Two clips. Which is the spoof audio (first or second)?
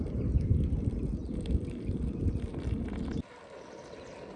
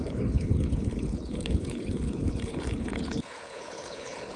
second